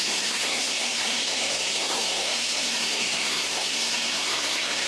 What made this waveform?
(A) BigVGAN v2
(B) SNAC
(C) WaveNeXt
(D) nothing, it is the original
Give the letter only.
B